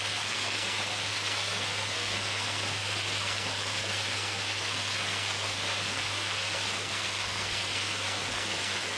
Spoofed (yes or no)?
yes